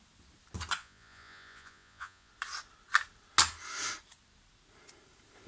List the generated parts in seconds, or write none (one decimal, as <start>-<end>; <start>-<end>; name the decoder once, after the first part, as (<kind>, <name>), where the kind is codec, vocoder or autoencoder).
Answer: 0.8-2.3 (vocoder, Vocos)